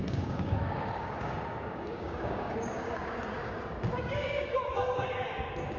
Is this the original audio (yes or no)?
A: no